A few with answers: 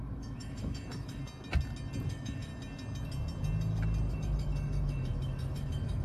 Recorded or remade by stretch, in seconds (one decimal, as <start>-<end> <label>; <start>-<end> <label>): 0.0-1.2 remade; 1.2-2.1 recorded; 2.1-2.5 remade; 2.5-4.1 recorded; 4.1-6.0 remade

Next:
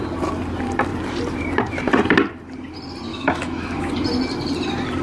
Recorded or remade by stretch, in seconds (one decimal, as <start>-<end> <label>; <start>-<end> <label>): 0.0-3.1 recorded; 3.1-3.8 remade; 3.8-5.0 recorded

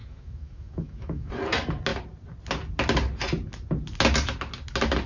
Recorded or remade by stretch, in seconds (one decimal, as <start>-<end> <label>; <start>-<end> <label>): 0.0-1.3 remade; 1.3-5.1 recorded

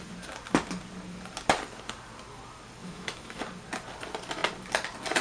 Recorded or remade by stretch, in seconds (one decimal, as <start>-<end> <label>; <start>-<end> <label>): 0.0-2.8 recorded; 2.8-3.4 remade; 3.4-5.2 recorded

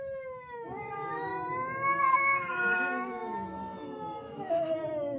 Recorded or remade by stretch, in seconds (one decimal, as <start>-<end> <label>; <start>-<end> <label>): 0.0-1.3 remade; 1.3-2.1 recorded; 2.1-5.2 remade

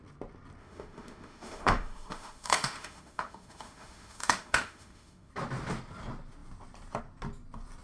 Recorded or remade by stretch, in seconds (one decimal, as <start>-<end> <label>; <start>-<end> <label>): 0.0-0.6 recorded; 0.6-5.3 remade; 5.3-7.8 recorded

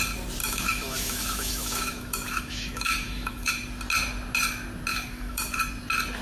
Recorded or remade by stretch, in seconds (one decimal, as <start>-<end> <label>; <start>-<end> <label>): 0.0-0.4 recorded; 0.4-3.5 remade; 3.5-4.9 recorded; 4.9-5.5 remade; 5.5-6.2 recorded

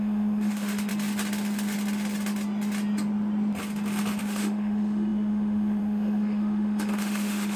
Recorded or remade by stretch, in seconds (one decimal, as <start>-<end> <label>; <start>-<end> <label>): 0.0-0.9 remade; 0.9-4.2 recorded; 4.2-7.6 remade